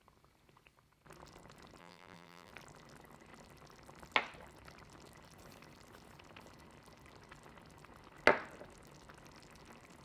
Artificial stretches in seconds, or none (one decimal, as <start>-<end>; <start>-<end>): 1.8-2.5